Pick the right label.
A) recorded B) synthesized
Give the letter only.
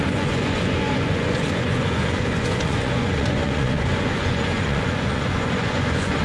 B